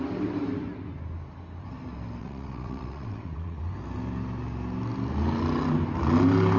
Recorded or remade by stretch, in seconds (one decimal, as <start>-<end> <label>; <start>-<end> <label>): 0.0-2.2 recorded; 2.2-3.6 remade; 3.6-6.6 recorded